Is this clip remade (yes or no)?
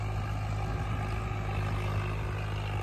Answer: no